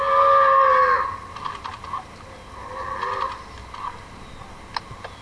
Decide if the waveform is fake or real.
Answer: real